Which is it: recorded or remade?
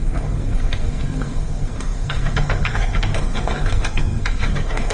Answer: remade